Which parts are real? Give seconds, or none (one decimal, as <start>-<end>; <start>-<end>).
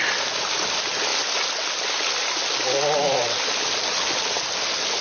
0.0-5.0